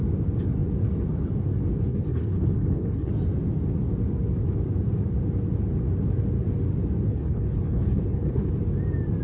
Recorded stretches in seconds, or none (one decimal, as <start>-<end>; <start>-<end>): 0.0-1.9; 3.1-7.1; 8.5-9.2